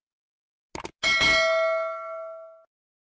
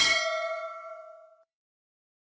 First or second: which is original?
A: first